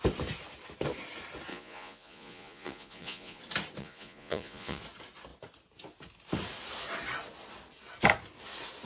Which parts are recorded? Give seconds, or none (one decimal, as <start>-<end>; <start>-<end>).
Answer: 0.0-1.5; 3.4-3.8; 4.8-8.9